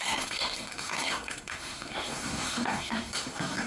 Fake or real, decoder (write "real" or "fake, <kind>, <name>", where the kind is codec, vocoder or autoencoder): fake, codec, SNAC